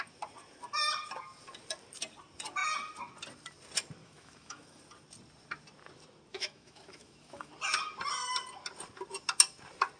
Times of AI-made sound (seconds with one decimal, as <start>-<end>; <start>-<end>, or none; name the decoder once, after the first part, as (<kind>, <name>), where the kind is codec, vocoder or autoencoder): 4.0-4.8 (autoencoder, DAC-VAE); 6.3-7.5